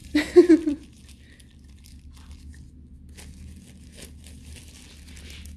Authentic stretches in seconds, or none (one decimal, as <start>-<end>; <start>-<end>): 0.5-5.6